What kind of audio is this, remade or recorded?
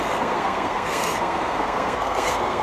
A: remade